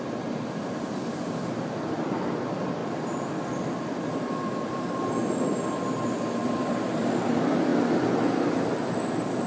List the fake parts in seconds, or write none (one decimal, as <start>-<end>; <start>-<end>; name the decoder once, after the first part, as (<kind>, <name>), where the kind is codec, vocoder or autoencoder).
2.8-5.1 (vocoder, BigVGAN v2); 6.4-7.1; 7.7-8.5